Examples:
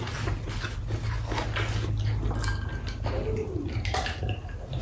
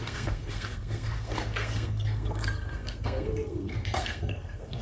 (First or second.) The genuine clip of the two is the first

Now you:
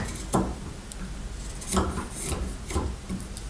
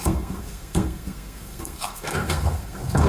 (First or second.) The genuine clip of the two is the first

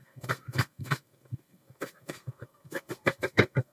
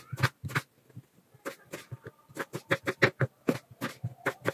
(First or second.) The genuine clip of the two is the second